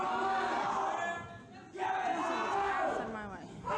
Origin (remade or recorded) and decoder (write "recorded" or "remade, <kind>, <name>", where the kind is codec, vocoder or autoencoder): recorded